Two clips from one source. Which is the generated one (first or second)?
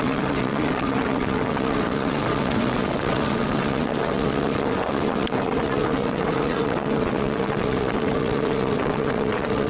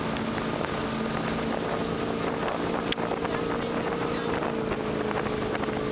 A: first